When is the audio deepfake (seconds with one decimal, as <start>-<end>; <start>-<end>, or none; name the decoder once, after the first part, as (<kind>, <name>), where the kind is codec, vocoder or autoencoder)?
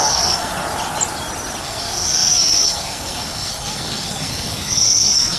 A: 0.0-0.5 (codec, SNAC); 1.6-5.4